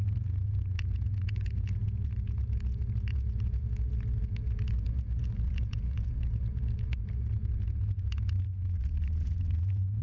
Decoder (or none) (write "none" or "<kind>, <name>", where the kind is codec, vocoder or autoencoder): vocoder, Vocos